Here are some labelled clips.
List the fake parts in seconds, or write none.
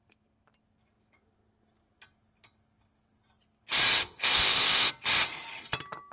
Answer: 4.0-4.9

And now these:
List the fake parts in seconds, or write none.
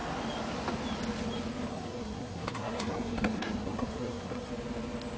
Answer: 1.7-4.5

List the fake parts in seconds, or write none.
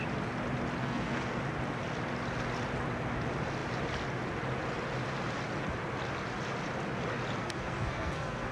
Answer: 0.8-1.4; 7.4-8.5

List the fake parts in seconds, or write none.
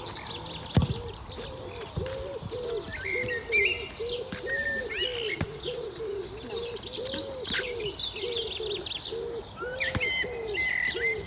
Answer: 5.3-6.0